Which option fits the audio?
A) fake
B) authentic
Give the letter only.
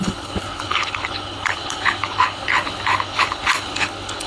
A